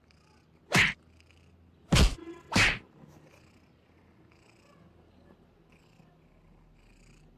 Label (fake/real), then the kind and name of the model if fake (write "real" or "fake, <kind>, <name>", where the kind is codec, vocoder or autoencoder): real